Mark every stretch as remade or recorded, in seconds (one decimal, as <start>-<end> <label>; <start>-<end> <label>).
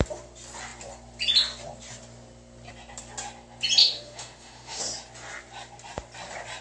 0.0-3.8 recorded; 3.8-4.8 remade; 4.8-6.6 recorded